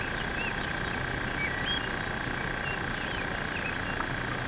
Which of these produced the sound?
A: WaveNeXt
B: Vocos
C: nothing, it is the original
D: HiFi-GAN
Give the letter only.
C